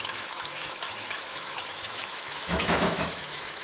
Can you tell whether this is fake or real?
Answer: fake